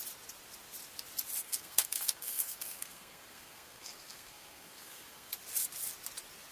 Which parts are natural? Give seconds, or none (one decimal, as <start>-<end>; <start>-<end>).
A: 0.0-1.4; 5.3-6.5